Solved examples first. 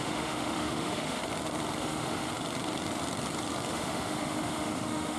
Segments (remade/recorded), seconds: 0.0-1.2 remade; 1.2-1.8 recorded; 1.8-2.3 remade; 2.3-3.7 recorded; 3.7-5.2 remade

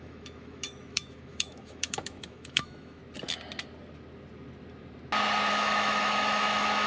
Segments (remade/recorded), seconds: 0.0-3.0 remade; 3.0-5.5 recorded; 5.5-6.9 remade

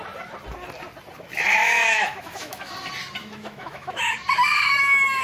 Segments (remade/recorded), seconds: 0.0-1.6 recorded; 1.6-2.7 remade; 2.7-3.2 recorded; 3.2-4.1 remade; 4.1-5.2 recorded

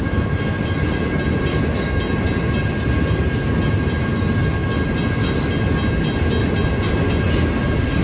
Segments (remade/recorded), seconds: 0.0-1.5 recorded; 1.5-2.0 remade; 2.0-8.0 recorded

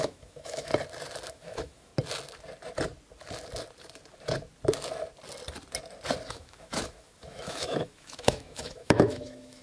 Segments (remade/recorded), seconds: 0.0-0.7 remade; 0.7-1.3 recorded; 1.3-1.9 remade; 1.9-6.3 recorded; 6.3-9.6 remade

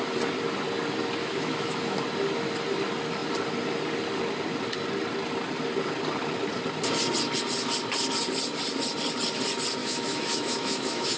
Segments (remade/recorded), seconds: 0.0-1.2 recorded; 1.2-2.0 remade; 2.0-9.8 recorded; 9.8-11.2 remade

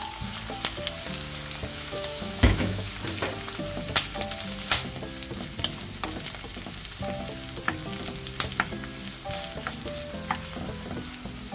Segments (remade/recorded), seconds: 0.0-1.7 recorded; 1.7-2.9 remade; 2.9-11.5 recorded

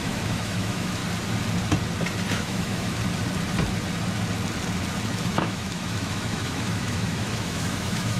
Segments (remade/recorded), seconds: 0.0-1.0 remade; 1.0-2.3 recorded; 2.3-3.0 remade; 3.0-5.2 recorded; 5.2-8.2 remade